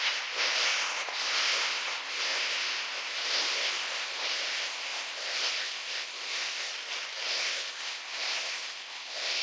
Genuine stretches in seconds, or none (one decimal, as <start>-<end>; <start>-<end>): 6.7-7.3